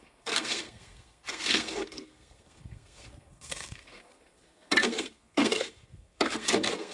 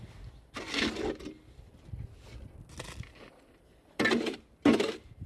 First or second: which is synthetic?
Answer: first